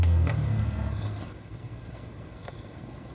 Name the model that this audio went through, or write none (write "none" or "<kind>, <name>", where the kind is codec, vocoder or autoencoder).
codec, SNAC